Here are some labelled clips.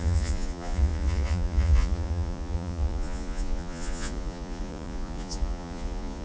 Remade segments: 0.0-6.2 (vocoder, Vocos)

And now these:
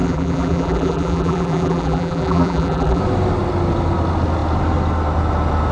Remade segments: 0.0-3.0 (vocoder, BigVGAN v2)